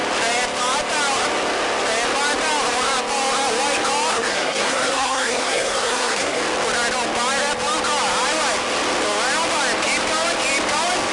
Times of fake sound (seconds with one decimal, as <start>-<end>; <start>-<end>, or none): 4.1-6.4